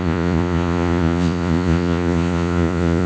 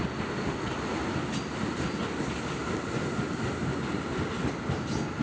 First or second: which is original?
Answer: second